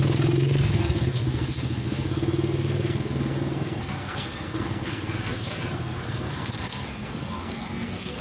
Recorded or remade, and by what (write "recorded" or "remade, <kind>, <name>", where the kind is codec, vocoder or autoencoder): remade, codec, SNAC